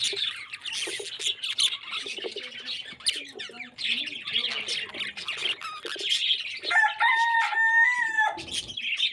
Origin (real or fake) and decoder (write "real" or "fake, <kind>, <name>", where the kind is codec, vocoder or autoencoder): real